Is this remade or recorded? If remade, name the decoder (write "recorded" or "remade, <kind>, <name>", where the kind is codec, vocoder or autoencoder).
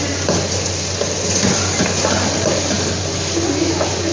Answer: recorded